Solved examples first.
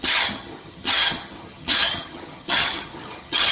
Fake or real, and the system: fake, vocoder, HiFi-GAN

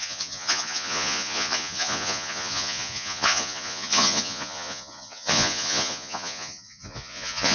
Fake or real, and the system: fake, vocoder, Vocos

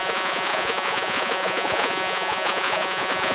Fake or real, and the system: fake, vocoder, Vocos